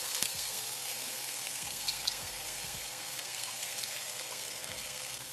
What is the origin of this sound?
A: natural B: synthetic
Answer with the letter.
B